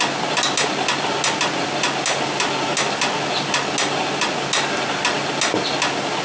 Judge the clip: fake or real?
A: real